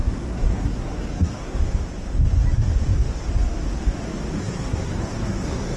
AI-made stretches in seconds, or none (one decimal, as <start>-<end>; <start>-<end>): 0.0-1.6; 4.4-5.8